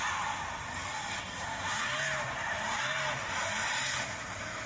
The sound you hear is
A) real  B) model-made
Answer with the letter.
A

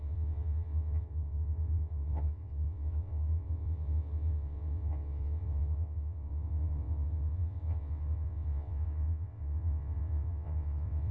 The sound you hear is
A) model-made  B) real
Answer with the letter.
A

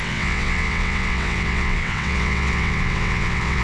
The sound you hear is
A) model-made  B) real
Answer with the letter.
A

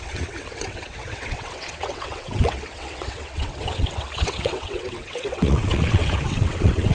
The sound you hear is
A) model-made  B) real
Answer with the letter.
A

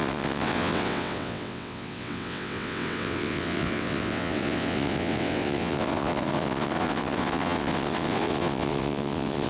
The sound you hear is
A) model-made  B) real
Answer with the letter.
A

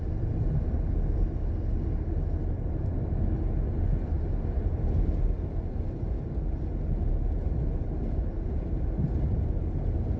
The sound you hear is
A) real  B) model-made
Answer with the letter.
A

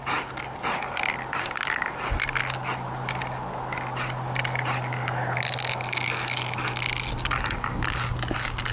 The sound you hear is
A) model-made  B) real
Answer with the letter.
B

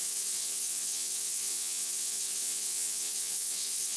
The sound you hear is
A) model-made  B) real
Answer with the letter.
A